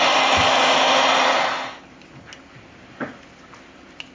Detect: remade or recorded recorded